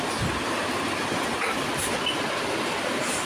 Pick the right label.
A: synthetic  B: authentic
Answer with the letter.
B